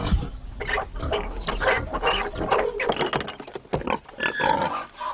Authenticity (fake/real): real